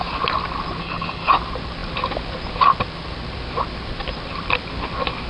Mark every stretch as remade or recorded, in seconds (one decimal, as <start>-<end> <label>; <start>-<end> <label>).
0.0-0.8 recorded; 0.8-1.3 remade; 1.3-5.3 recorded